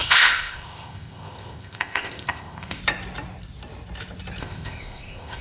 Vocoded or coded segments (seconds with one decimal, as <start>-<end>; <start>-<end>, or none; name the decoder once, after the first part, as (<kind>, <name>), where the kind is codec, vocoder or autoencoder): 0.0-2.8 (codec, ZipCodec); 4.4-5.4